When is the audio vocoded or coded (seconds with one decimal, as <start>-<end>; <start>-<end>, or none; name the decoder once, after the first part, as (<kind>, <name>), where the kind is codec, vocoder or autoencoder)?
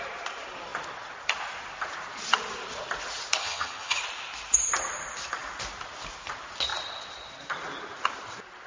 3.4-4.0 (vocoder, HiFi-GAN)